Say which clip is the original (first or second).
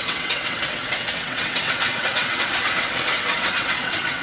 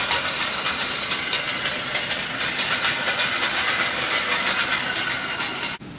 second